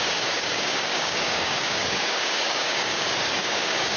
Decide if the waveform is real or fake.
fake